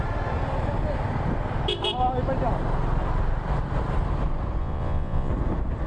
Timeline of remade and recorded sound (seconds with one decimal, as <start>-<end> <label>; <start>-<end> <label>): 0.0-4.6 recorded; 4.6-5.3 remade; 5.3-5.9 recorded